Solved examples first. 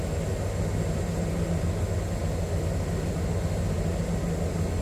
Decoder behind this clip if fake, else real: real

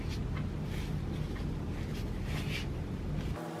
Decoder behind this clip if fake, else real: real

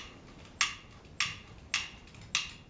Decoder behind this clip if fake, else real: real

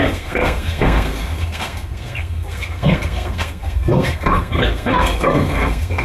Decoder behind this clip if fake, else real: fake, codec, SNAC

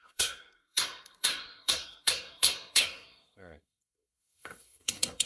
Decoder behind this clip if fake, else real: fake, codec, SNAC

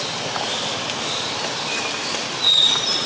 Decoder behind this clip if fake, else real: real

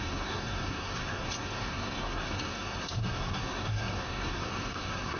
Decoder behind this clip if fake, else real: fake, codec, SNAC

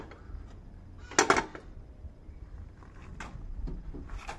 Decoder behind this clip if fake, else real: real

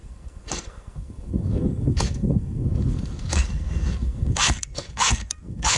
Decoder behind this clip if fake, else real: fake, codec, SNAC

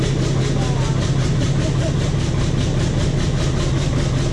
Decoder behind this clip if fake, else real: real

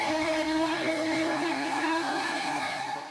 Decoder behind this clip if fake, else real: fake, codec, SNAC